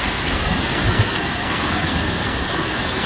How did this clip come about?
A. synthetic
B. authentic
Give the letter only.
A